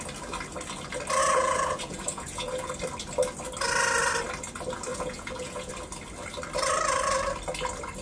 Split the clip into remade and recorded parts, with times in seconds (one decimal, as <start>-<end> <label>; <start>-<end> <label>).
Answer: 0.0-1.2 recorded; 1.2-2.7 remade; 2.7-4.9 recorded; 4.9-5.7 remade; 5.7-8.0 recorded